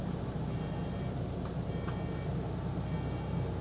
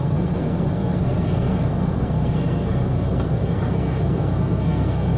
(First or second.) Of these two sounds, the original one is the first